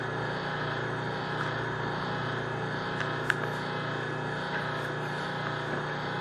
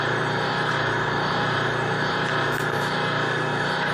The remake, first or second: second